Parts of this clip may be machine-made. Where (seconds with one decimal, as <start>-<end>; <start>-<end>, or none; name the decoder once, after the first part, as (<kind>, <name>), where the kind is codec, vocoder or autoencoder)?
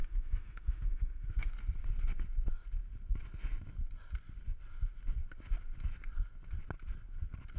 0.0-1.5 (autoencoder, DAC-VAE)